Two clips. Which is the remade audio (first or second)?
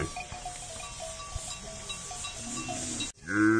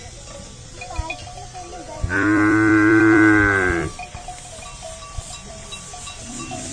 second